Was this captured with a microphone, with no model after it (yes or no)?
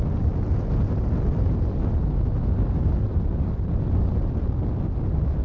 yes